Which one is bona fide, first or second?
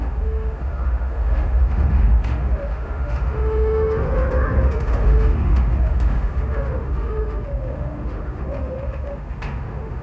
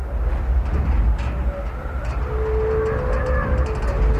second